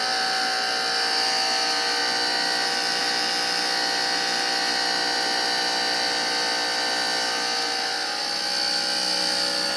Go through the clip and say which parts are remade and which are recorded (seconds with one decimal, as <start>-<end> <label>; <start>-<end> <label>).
0.0-9.8 recorded